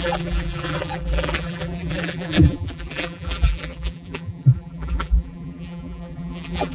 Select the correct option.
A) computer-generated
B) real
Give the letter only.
A